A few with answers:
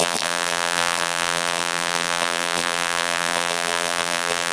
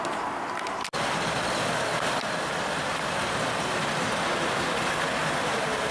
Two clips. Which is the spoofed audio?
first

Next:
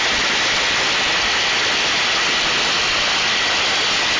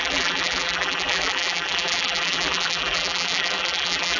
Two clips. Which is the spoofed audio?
second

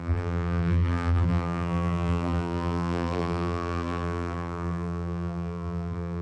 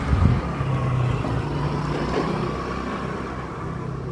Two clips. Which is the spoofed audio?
first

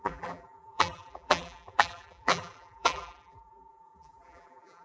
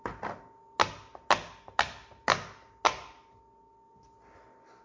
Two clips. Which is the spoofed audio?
first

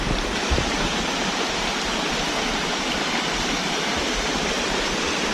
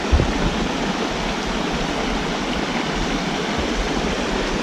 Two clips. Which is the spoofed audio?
first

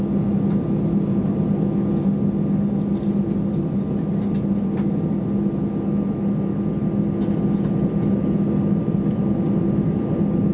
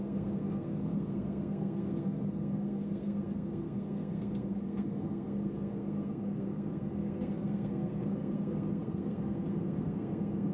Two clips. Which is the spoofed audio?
second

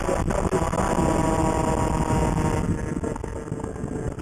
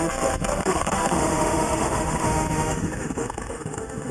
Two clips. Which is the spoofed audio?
second